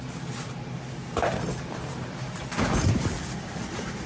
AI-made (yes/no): yes